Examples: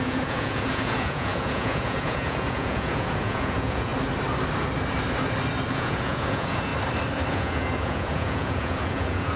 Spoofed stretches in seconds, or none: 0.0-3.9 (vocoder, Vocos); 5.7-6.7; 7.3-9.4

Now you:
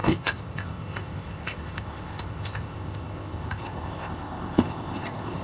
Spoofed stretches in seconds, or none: 0.0-5.4 (codec, ZipCodec)